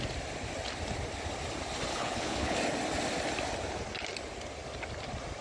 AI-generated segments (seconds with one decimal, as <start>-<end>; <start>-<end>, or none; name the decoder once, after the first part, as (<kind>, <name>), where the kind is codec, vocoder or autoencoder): 1.9-2.6 (codec, HILCodec)